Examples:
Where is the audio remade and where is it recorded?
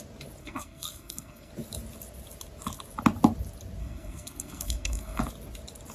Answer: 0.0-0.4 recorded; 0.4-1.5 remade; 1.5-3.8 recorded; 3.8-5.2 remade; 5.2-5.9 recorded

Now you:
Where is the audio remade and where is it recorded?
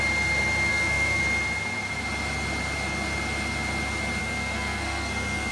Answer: 0.0-0.7 recorded; 0.7-1.2 remade; 1.2-4.2 recorded; 4.2-5.5 remade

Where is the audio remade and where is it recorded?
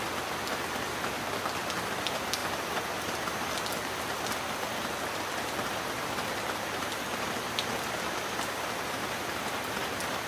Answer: 0.0-10.3 recorded